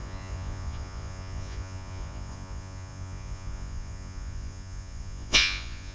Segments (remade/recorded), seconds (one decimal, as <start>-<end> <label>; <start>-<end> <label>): 0.0-5.9 remade